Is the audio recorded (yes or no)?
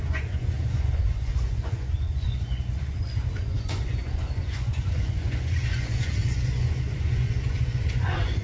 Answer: no